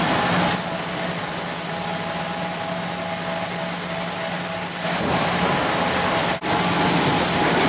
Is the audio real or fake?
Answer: real